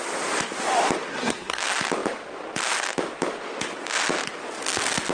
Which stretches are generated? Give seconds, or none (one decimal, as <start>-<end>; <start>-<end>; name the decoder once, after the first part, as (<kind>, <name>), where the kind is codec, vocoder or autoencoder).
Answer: 1.1-1.6 (codec, SNAC)